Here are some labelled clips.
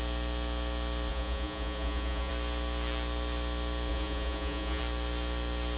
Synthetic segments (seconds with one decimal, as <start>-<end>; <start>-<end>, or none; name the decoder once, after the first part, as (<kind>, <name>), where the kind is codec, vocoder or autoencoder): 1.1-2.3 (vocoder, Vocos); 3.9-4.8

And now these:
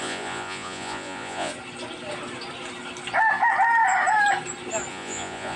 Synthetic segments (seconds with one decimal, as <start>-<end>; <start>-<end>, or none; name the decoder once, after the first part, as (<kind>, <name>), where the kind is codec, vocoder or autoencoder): 0.0-1.5 (vocoder, Vocos); 4.9-5.6

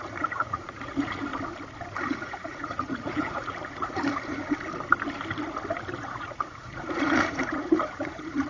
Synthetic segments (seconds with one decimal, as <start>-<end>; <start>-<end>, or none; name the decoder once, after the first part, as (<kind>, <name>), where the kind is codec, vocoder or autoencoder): 0.0-1.3 (vocoder, Vocos); 2.1-4.4; 6.0-8.5

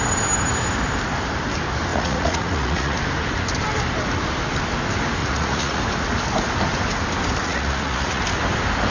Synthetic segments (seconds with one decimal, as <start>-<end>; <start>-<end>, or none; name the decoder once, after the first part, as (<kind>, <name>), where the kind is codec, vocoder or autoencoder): 1.9-3.0 (vocoder, Vocos); 5.2-5.8; 7.4-8.2

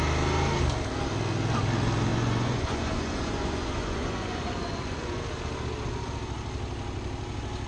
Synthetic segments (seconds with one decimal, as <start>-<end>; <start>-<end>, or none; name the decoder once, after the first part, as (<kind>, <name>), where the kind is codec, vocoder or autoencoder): 2.1-5.2 (vocoder, Vocos)

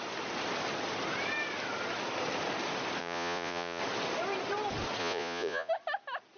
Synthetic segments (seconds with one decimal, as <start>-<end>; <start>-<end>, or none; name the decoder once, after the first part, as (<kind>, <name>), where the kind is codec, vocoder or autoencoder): 3.0-3.8 (vocoder, Vocos); 5.0-5.7

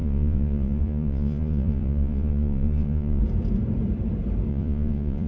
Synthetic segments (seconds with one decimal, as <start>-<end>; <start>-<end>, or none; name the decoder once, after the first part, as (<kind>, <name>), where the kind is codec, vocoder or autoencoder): 0.0-3.2 (vocoder, Vocos); 4.5-5.3